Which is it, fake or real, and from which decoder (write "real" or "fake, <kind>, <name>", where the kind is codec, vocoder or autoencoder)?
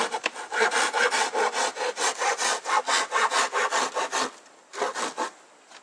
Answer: real